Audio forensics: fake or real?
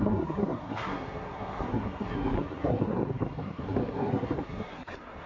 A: fake